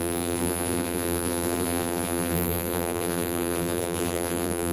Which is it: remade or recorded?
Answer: remade